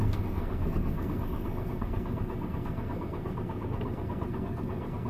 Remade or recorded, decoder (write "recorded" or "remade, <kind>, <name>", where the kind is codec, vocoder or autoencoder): remade, codec, SNAC